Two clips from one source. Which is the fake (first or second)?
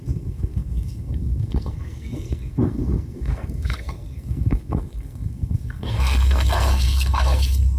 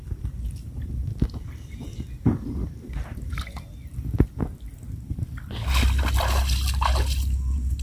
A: first